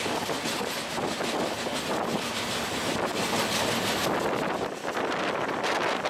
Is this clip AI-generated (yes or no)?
no